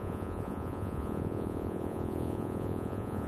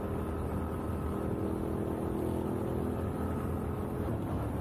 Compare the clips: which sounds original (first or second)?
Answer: second